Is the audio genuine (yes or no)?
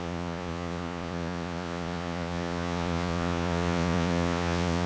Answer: no